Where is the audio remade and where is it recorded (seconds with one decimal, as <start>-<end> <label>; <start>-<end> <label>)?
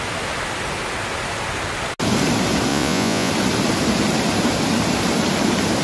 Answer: 0.0-2.7 recorded; 2.7-3.3 remade; 3.3-5.8 recorded